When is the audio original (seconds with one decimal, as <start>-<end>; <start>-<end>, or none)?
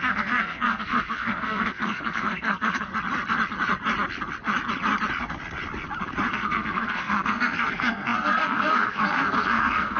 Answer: 2.9-6.3